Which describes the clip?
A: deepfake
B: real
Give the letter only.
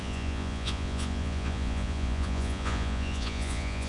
A